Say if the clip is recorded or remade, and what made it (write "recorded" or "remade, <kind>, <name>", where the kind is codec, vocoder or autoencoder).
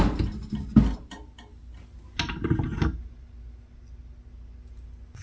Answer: recorded